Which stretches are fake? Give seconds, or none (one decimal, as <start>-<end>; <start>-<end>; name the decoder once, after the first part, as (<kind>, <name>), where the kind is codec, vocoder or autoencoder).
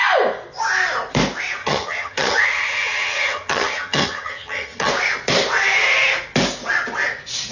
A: 1.6-4.9 (vocoder, HiFi-GAN)